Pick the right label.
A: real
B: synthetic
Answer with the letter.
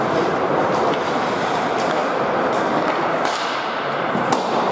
A